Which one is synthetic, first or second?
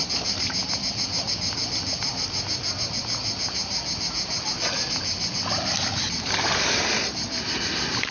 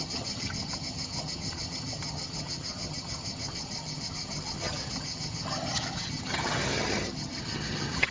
second